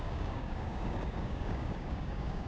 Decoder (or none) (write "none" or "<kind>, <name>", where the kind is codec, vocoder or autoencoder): codec, DAC